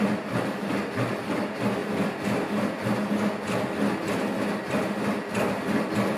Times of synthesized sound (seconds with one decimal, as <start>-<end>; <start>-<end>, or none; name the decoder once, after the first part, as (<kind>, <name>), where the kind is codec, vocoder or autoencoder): none